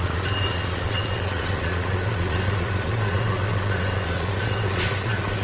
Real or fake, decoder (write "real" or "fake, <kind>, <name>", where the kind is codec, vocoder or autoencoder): fake, vocoder, Vocos